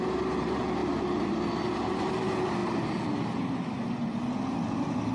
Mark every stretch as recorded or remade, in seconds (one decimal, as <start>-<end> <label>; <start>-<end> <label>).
0.0-5.1 recorded